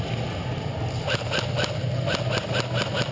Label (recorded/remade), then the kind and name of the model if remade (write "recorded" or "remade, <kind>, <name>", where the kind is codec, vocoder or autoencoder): recorded